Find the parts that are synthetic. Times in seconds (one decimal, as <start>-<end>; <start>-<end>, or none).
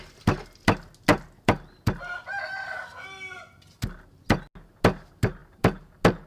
none